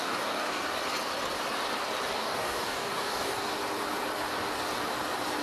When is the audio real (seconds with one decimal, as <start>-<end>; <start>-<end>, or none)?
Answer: 0.7-2.1; 3.3-5.4